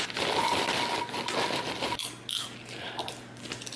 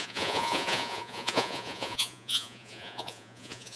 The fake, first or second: second